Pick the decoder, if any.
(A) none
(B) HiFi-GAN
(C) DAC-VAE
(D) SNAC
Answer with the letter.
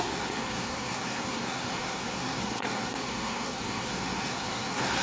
D